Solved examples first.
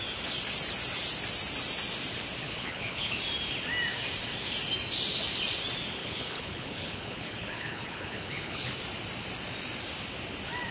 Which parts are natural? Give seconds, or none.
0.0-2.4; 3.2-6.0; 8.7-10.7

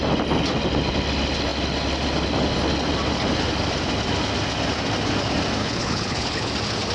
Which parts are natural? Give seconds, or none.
0.0-5.6; 6.5-6.9

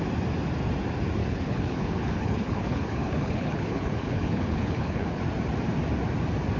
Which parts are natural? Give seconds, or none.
0.0-1.2; 5.2-6.6

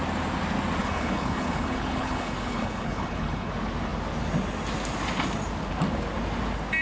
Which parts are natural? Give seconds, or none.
0.0-0.8; 3.5-6.8

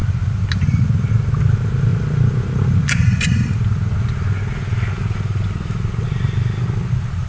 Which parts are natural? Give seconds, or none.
0.0-7.3